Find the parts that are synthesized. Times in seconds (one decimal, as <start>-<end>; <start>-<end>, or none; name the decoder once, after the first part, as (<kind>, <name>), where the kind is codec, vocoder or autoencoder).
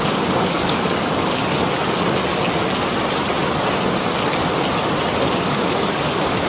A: 0.0-1.4 (codec, DAC); 5.3-6.5